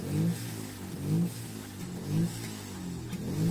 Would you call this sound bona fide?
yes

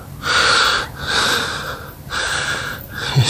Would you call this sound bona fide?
yes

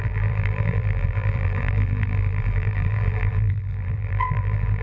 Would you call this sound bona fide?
no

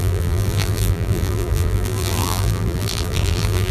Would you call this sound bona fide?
no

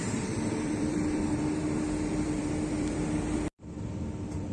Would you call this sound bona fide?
no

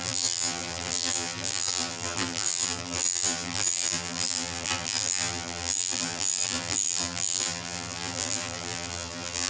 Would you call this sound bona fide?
no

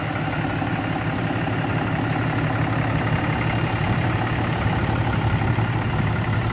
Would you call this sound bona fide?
yes